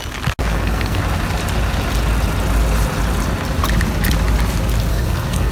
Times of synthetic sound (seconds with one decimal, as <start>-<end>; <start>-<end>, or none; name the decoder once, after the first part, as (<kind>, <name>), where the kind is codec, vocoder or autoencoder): 0.4-1.0 (codec, SNAC); 4.9-5.5